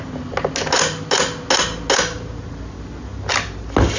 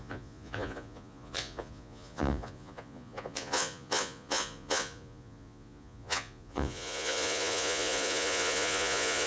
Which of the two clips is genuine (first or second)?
first